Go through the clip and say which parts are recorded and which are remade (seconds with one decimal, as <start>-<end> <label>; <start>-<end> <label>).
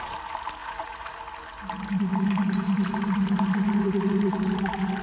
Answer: 0.0-0.6 recorded; 0.6-1.2 remade; 1.2-5.0 recorded